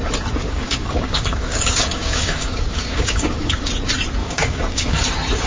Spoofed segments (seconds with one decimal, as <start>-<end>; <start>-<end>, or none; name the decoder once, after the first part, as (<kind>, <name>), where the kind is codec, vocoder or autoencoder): 0.4-3.7 (codec, DAC); 4.2-5.0